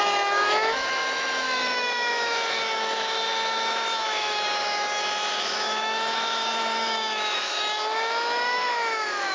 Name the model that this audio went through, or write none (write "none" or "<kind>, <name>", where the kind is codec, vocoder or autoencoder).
autoencoder, DAC-VAE